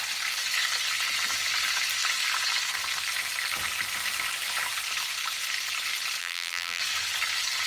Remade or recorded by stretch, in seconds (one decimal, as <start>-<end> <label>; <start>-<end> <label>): 0.0-6.2 recorded; 6.2-6.8 remade; 6.8-7.7 recorded